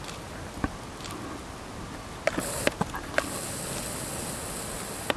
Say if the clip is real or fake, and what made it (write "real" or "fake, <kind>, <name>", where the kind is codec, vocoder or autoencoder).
real